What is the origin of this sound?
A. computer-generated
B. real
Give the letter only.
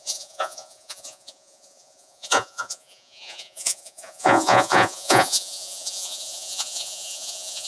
A